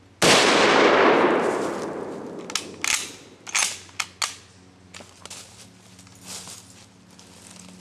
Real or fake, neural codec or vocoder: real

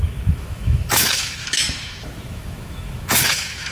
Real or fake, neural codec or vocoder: fake, autoencoder, DAC-VAE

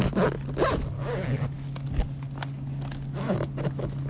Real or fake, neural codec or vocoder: real